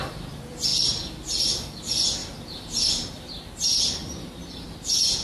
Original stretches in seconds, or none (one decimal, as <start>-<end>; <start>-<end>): 0.0-5.2